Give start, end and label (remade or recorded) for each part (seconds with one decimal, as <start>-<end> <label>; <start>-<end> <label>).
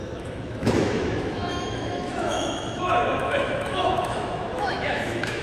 0.0-5.4 remade